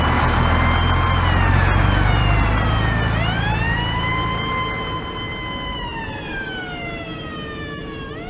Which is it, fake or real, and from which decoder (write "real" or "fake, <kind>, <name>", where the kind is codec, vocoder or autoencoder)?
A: real